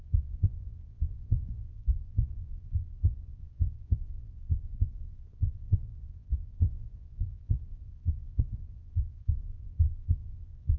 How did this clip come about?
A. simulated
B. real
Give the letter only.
A